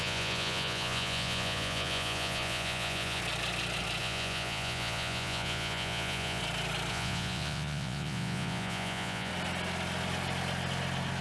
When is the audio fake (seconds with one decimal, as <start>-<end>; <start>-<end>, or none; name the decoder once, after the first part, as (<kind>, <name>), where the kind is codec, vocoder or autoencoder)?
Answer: 0.0-3.2 (vocoder, Vocos); 4.0-6.4; 6.9-9.3